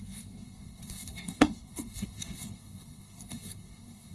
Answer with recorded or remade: remade